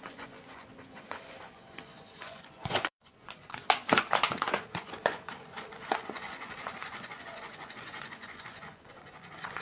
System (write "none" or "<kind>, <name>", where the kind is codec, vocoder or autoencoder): vocoder, Vocos